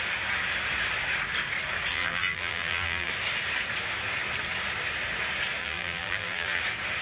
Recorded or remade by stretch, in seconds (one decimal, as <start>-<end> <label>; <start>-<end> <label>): 0.0-1.9 recorded; 1.9-3.1 remade; 3.1-5.6 recorded; 5.6-6.6 remade; 6.6-7.0 recorded